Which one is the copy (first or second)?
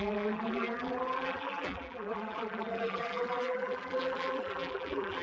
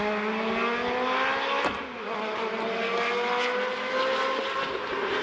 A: first